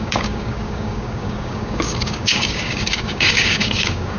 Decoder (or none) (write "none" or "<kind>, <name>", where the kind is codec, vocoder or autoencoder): codec, DAC